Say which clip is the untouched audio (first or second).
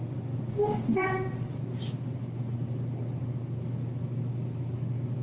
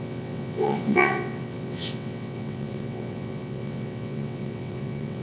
first